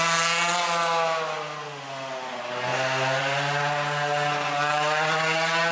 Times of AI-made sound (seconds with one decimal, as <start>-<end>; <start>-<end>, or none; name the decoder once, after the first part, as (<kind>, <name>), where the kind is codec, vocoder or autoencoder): none